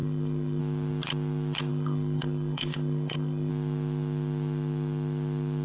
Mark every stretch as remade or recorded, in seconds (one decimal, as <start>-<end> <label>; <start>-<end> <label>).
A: 0.0-0.6 remade; 0.6-1.7 recorded; 1.7-3.5 remade; 3.5-5.6 recorded